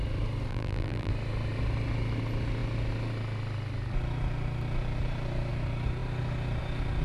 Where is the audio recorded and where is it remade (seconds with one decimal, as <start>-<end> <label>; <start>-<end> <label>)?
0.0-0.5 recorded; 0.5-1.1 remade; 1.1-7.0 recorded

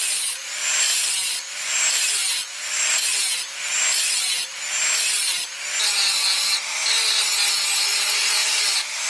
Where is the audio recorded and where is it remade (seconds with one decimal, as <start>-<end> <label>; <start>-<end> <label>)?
0.0-0.4 recorded; 0.4-3.2 remade; 3.2-8.4 recorded; 8.4-9.1 remade

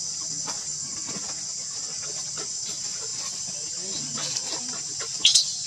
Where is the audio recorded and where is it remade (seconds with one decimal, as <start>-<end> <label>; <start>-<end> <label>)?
0.0-5.7 recorded

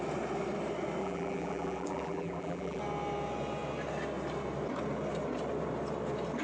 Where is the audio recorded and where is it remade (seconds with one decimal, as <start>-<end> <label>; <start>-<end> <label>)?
0.0-1.0 recorded; 1.0-2.8 remade; 2.8-6.4 recorded